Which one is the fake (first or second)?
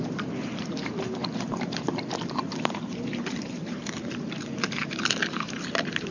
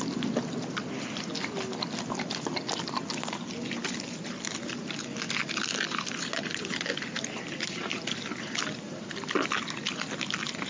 first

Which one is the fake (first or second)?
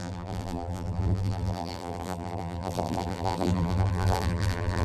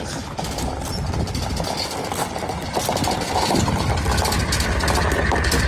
first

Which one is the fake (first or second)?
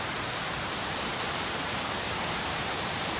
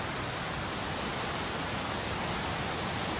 first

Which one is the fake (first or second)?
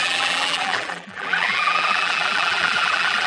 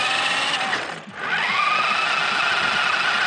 first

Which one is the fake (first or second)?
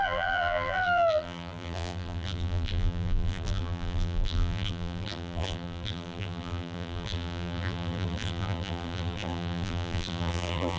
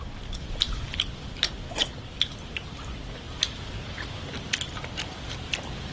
first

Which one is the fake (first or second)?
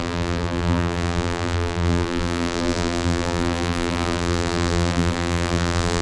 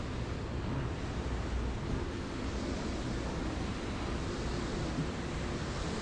first